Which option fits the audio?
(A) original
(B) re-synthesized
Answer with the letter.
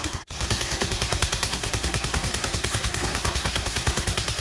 B